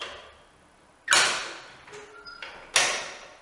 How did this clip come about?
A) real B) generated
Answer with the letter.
A